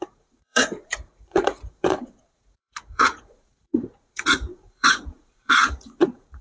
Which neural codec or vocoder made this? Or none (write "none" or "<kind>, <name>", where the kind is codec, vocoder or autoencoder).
vocoder, Vocos